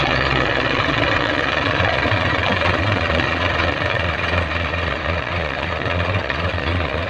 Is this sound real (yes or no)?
no